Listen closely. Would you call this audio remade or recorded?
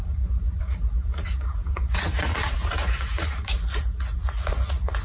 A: remade